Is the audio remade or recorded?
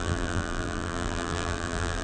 remade